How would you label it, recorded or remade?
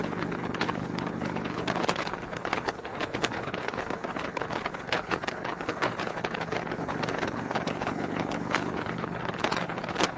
remade